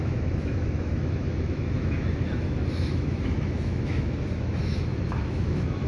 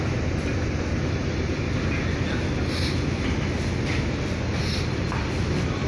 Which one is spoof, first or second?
first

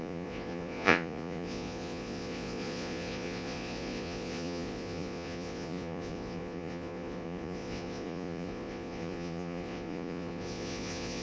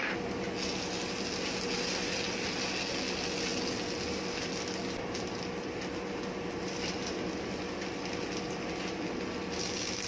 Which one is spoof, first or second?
first